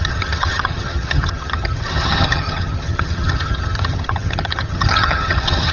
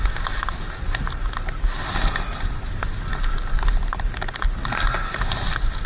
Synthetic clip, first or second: first